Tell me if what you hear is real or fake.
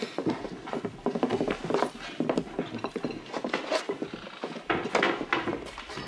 real